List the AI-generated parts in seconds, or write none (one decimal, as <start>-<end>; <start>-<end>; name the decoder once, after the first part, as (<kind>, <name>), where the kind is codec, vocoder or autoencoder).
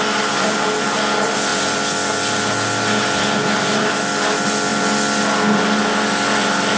none